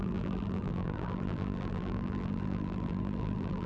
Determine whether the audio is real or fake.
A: fake